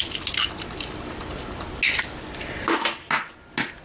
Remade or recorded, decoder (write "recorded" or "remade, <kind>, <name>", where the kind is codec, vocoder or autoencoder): recorded